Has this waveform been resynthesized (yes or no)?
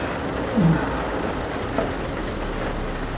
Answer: no